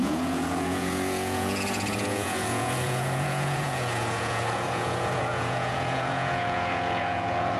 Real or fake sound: fake